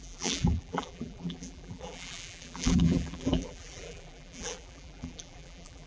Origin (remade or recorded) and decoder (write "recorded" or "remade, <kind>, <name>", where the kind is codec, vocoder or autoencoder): remade, vocoder, BigVGAN v2